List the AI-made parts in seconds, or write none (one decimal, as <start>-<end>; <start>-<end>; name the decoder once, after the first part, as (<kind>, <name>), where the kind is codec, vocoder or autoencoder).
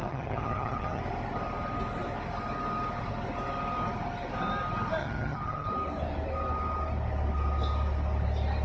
0.0-1.0 (vocoder, HiFi-GAN); 5.0-5.7